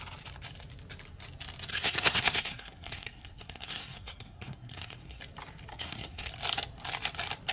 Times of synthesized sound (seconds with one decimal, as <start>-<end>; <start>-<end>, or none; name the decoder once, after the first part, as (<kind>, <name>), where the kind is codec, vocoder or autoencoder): 1.7-5.2 (codec, SNAC); 5.7-6.3